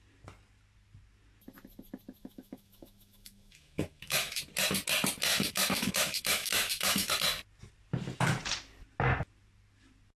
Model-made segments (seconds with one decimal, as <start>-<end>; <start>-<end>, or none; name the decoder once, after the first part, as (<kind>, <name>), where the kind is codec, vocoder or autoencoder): 2.2-4.4 (autoencoder, DAC-VAE); 5.3-7.1